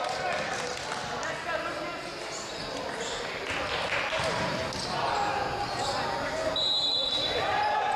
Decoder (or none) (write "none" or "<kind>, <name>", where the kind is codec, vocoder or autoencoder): none